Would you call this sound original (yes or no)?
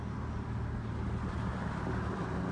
yes